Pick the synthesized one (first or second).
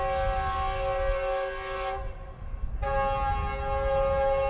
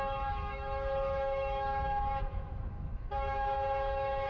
second